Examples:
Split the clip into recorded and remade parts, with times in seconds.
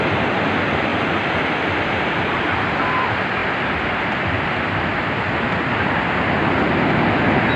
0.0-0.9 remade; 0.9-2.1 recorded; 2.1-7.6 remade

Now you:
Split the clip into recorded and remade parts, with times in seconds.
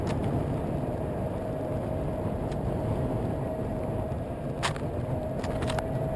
0.0-6.2 recorded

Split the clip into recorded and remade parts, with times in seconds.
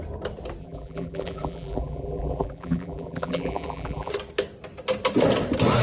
0.0-0.6 recorded; 0.6-4.1 remade; 4.1-5.8 recorded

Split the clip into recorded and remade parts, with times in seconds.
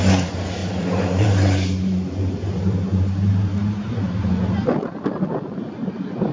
0.0-0.6 recorded; 0.6-3.9 remade; 3.9-6.3 recorded